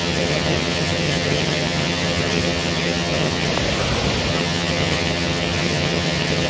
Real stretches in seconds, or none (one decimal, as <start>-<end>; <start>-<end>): 3.5-4.3